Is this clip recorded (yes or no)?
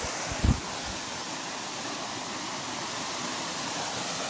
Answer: yes